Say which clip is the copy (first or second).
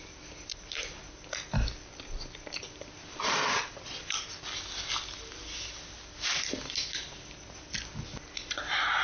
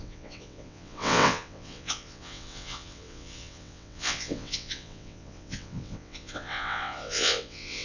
second